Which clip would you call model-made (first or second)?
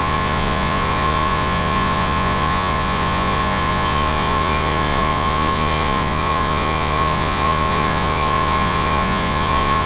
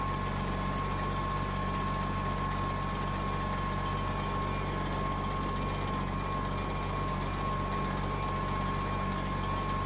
first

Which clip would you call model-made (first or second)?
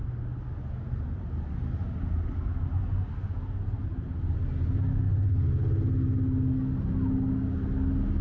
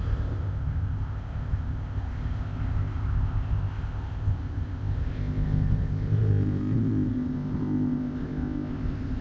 second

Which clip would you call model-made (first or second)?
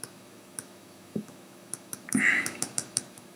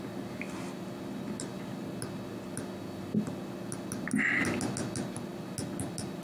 first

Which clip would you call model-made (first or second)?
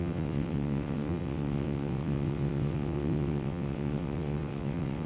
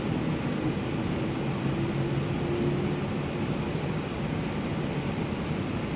first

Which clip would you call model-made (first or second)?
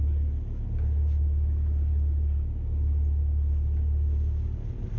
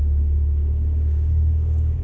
second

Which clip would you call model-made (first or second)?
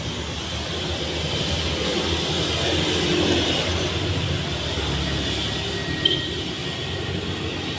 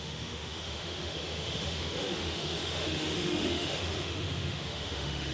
second